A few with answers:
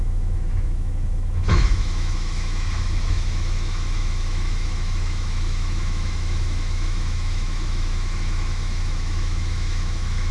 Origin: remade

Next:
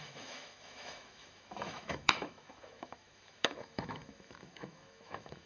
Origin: remade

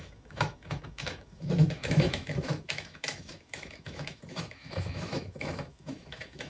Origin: remade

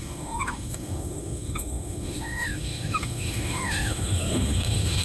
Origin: remade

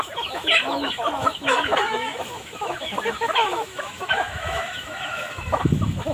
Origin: remade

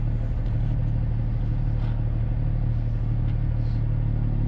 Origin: recorded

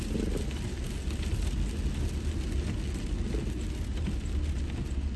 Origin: recorded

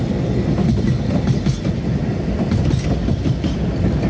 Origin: recorded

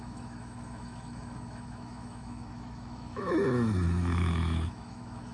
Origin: remade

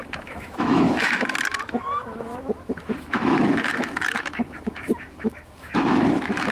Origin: remade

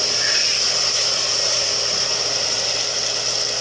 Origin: recorded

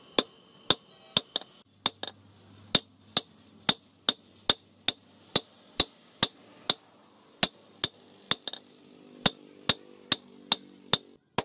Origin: recorded